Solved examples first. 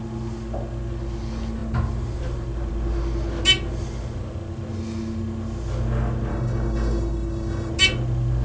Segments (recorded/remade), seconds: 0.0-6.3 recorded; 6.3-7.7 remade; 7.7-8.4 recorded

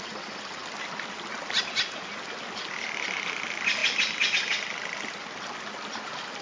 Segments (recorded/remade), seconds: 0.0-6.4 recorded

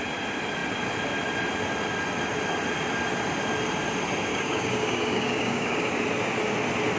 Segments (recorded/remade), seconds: 0.0-4.3 recorded; 4.3-5.9 remade; 5.9-7.0 recorded

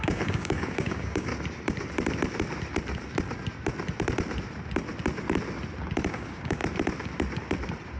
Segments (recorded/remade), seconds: 0.0-1.3 remade; 1.3-6.1 recorded; 6.1-6.6 remade; 6.6-8.0 recorded